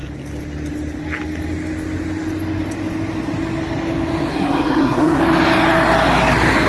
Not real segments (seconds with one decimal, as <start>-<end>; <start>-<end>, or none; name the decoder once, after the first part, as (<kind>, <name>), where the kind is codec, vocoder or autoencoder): 4.3-5.2 (codec, SNAC)